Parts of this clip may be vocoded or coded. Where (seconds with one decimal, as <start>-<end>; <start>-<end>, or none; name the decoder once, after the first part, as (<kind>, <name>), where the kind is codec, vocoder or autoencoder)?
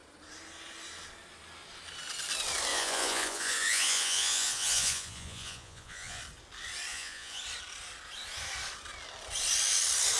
2.7-6.2 (vocoder, Vocos); 6.9-7.4